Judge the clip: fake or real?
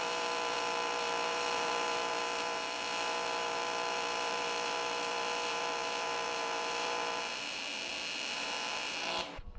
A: fake